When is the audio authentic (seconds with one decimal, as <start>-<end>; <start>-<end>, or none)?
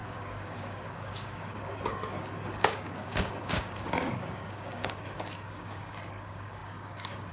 none